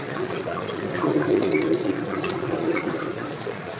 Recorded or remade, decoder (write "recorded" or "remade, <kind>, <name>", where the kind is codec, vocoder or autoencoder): remade, vocoder, Vocos